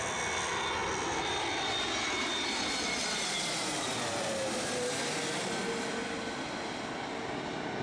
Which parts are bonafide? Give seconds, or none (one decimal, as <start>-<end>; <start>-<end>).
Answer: 0.0-0.8; 5.5-7.8